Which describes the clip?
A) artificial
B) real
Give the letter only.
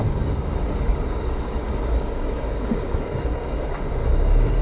A